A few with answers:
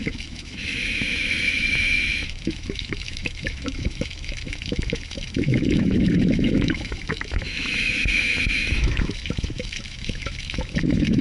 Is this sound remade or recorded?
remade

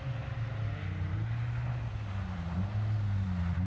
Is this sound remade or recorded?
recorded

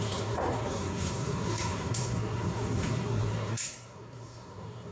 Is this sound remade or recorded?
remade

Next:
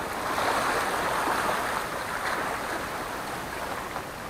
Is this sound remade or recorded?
recorded